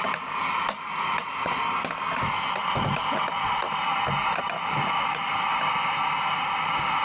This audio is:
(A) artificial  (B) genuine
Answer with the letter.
B